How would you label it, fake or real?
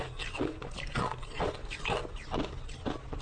real